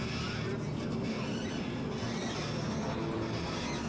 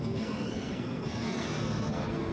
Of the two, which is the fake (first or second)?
second